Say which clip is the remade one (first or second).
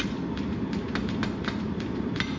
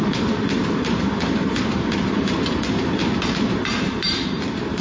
second